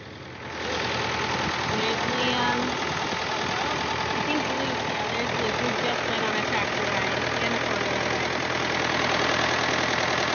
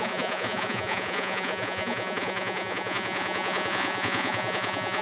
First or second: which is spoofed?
second